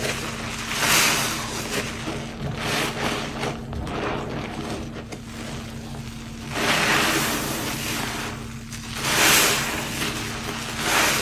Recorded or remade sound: recorded